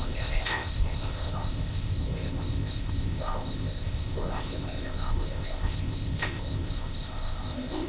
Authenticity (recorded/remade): remade